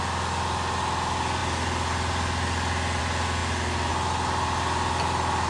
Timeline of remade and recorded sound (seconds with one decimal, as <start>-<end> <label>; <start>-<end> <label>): 0.0-5.5 recorded